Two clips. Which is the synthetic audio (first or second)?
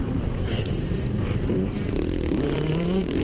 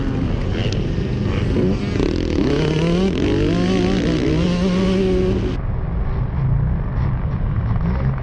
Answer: first